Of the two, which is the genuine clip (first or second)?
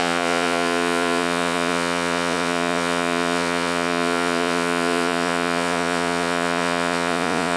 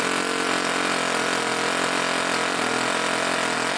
second